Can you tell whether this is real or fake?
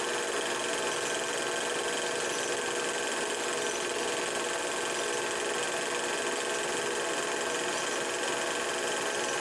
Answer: real